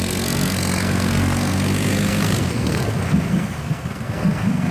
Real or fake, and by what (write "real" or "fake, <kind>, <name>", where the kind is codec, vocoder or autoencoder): fake, codec, SNAC